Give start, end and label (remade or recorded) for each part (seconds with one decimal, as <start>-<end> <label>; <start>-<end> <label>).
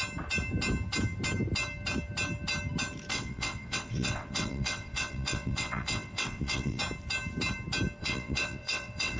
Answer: 0.0-3.1 recorded; 3.1-6.8 remade; 6.8-8.0 recorded; 8.0-9.2 remade